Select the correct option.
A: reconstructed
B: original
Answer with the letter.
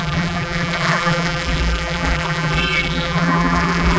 A